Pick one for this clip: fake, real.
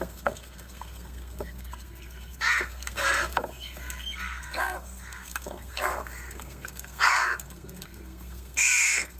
fake